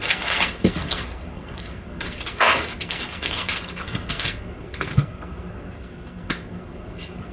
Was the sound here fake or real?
fake